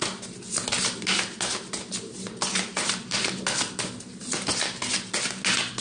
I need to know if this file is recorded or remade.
recorded